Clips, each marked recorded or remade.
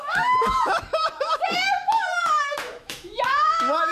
remade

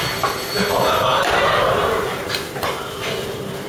recorded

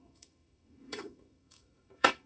remade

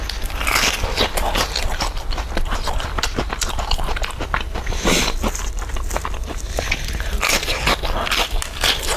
recorded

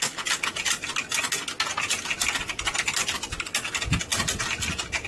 recorded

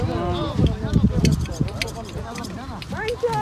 recorded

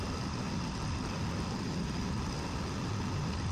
recorded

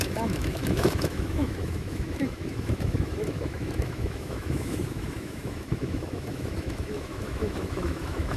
remade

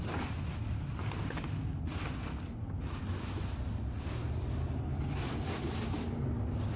recorded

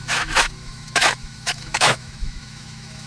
remade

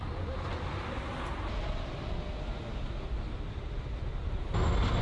recorded